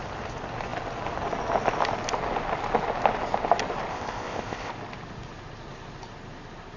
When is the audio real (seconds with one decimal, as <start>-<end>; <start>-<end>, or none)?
0.0-3.9; 4.7-6.8